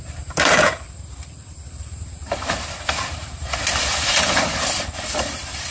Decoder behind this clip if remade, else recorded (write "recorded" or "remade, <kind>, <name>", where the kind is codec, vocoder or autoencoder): remade, vocoder, BigVGAN v2